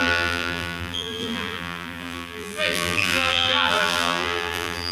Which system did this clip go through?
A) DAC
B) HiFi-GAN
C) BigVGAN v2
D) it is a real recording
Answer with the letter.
C